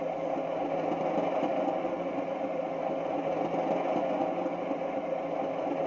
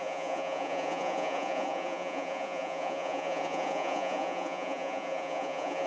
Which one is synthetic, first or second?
second